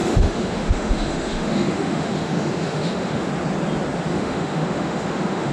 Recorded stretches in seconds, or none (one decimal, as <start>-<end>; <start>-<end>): 3.3-4.1